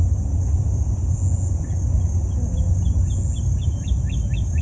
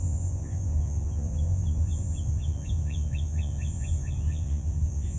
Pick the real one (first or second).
first